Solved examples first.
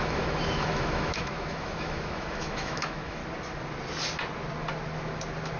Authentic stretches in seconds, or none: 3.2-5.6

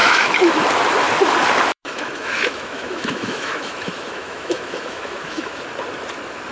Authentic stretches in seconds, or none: 0.5-1.7; 5.6-6.5